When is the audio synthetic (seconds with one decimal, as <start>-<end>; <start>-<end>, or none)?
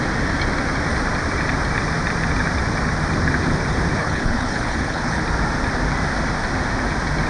4.0-5.2